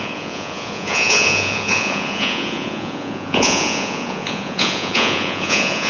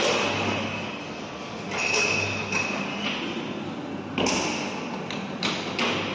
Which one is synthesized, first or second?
first